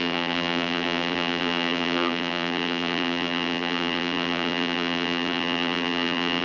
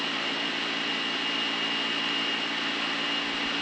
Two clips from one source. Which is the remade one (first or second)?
first